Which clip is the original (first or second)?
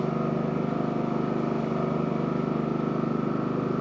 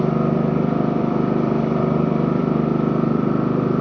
first